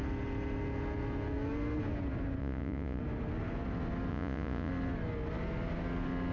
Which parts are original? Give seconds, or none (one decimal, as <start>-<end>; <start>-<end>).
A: 0.0-2.4; 3.0-4.1; 4.7-6.3